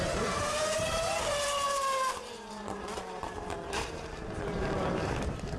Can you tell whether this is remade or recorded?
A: remade